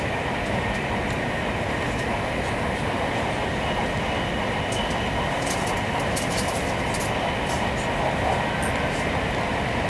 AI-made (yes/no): no